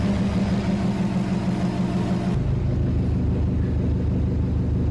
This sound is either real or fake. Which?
real